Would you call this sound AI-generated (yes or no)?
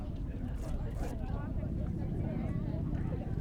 yes